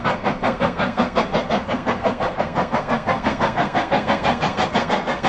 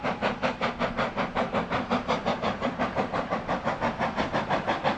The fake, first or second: first